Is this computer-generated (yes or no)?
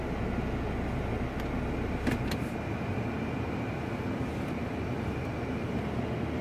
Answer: no